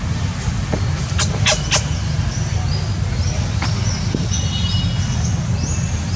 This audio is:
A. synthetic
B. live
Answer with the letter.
B